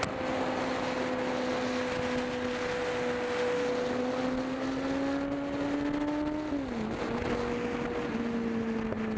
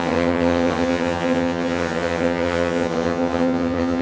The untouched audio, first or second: first